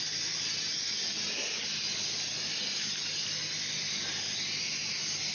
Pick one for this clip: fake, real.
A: real